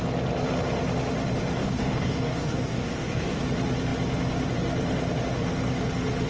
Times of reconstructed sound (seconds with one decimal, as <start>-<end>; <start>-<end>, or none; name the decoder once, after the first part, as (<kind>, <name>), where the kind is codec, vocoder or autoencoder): 1.6-3.4 (codec, DAC)